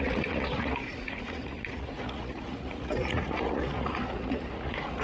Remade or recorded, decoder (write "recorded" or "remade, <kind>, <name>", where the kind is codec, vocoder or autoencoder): remade, vocoder, Vocos